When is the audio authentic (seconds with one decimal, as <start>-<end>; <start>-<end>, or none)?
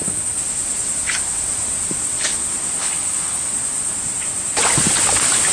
0.0-2.8; 3.5-5.5